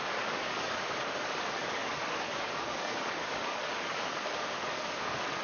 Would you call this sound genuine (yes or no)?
no